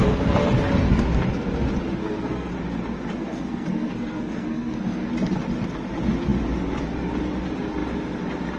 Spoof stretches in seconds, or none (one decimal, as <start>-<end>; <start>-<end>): 2.0-2.5; 3.1-5.1